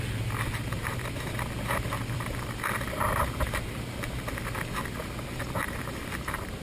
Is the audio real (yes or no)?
yes